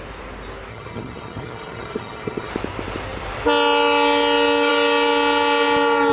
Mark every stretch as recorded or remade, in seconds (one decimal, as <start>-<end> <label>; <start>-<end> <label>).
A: 0.0-0.7 recorded; 0.7-2.5 remade; 2.5-6.1 recorded